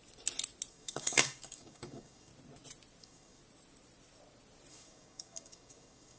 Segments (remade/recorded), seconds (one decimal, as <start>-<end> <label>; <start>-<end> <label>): 0.0-0.7 recorded; 0.7-2.3 remade; 2.3-3.0 recorded; 3.0-3.4 remade; 3.4-4.7 recorded; 4.7-6.2 remade